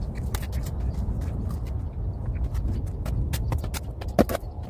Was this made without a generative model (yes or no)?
yes